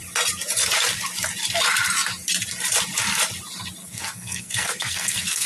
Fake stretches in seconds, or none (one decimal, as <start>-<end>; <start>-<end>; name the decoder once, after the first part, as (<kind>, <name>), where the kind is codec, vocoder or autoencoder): 3.8-5.5 (codec, SNAC)